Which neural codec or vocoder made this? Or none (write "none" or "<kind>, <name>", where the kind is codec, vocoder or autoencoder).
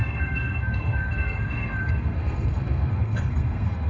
codec, SNAC